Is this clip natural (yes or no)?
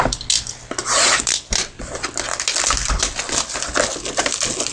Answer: yes